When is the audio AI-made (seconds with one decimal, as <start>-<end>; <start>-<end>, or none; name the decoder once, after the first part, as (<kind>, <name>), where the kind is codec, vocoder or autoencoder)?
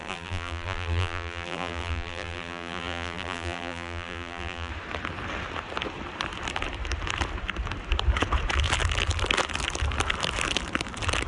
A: 0.0-4.7 (vocoder, BigVGAN v2)